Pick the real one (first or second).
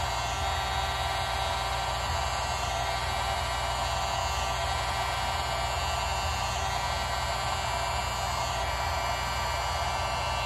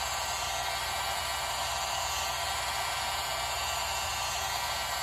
first